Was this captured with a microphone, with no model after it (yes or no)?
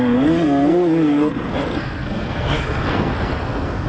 no